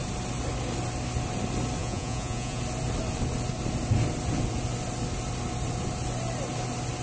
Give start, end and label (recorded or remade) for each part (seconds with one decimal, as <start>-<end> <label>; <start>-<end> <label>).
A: 0.0-1.8 recorded; 1.8-2.6 remade; 2.6-7.0 recorded